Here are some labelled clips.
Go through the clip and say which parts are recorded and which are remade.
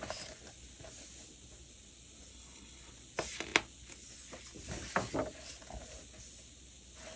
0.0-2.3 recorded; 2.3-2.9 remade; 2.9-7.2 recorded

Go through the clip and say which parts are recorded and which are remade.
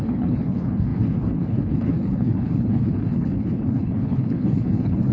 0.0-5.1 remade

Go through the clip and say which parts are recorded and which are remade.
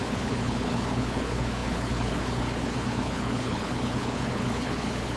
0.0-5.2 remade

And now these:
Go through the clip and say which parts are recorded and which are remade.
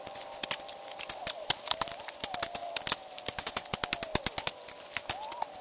0.0-5.6 recorded